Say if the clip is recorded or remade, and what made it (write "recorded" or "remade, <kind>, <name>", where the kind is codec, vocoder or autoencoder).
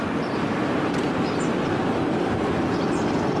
remade, vocoder, BigVGAN v2